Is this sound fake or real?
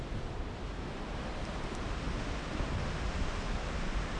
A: real